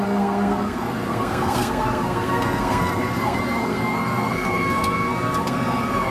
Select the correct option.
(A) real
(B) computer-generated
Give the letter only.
B